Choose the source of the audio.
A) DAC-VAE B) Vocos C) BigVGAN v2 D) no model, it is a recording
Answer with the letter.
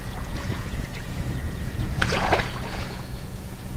B